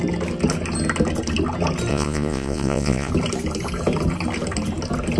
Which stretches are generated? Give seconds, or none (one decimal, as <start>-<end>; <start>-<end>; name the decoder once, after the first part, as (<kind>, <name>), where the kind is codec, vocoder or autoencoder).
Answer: 1.9-3.1 (vocoder, Vocos)